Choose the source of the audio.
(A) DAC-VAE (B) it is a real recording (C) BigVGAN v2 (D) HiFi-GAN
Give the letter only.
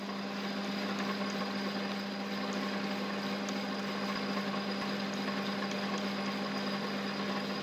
B